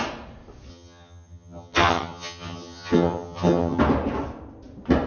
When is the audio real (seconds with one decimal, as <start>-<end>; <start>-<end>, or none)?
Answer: 0.0-0.7; 3.8-5.1